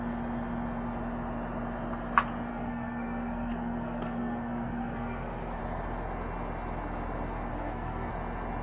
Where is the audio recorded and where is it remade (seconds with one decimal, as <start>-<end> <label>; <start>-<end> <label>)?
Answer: 0.0-2.5 recorded; 2.5-5.6 remade; 5.6-7.5 recorded; 7.5-8.1 remade; 8.1-8.6 recorded